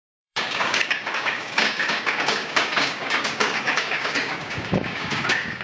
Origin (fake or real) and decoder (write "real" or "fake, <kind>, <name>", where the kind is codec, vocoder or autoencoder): fake, codec, DAC